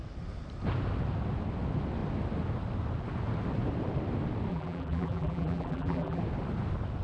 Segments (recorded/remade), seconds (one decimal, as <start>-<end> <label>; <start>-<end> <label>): 0.0-4.5 recorded; 4.5-6.2 remade; 6.2-7.0 recorded